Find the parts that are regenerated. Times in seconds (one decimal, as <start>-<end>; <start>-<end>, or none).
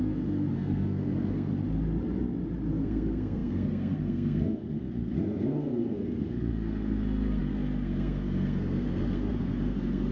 0.0-1.5; 2.7-10.1